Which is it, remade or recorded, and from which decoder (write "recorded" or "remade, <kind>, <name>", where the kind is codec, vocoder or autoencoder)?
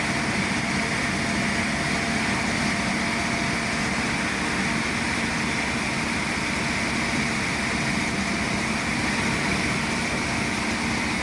recorded